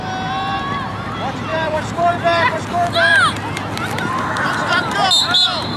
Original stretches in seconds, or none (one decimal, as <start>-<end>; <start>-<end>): 0.0-1.5; 2.6-5.8